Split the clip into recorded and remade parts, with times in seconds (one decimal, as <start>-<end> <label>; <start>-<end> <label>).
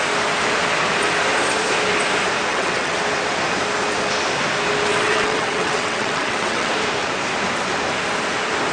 0.0-2.5 recorded; 2.5-3.0 remade; 3.0-4.9 recorded; 4.9-6.7 remade; 6.7-8.7 recorded